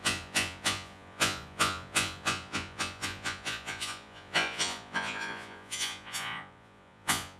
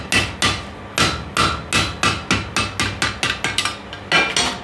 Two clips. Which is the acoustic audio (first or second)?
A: second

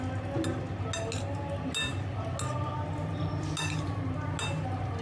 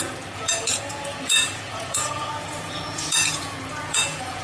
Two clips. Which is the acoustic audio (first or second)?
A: first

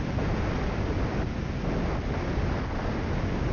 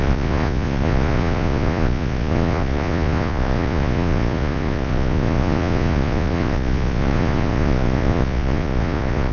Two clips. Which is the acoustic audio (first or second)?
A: first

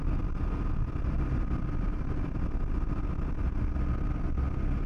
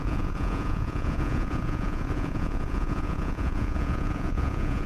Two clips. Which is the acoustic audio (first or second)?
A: first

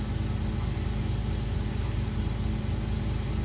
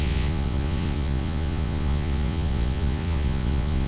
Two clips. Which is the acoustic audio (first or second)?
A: first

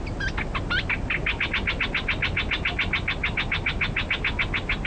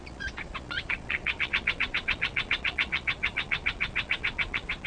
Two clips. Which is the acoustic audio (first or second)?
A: first